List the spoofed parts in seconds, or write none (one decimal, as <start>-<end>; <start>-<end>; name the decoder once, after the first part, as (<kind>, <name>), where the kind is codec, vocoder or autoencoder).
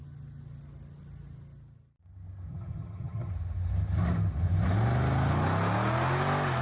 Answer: 2.5-3.3 (vocoder, HiFi-GAN)